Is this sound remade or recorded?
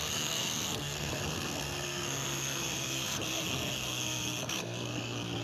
remade